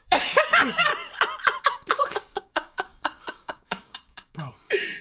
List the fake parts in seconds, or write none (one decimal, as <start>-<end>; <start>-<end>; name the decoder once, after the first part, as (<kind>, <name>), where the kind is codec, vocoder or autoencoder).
0.0-0.9 (codec, DAC); 1.6-5.0